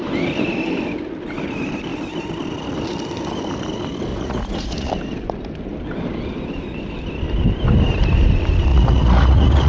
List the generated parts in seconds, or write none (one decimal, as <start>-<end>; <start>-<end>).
4.1-4.9; 8.7-9.7